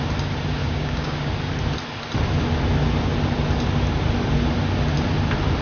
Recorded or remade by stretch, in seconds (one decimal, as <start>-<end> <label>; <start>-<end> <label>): 0.0-0.6 recorded; 0.6-1.3 remade; 1.3-5.6 recorded